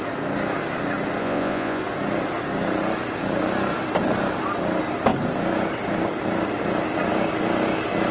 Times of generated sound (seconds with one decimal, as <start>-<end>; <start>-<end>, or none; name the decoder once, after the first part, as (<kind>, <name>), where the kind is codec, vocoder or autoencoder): 1.2-1.8 (vocoder, Vocos)